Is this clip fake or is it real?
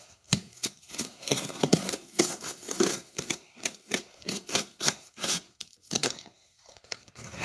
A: fake